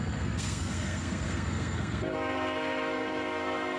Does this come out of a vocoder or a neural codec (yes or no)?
yes